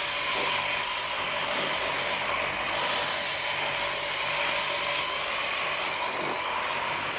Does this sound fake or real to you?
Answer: real